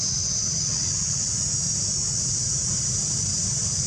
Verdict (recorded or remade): recorded